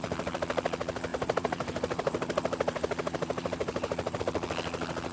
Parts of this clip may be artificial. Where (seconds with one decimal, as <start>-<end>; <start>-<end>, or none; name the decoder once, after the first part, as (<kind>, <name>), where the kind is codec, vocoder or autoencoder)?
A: 1.1-4.2 (vocoder, BigVGAN v2)